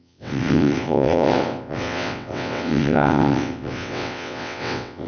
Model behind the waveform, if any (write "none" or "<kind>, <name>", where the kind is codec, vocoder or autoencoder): vocoder, WaveNeXt